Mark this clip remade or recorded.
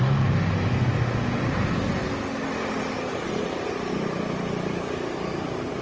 recorded